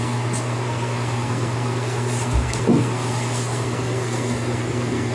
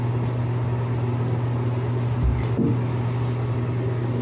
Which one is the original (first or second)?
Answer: second